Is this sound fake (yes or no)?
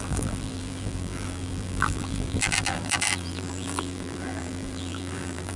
yes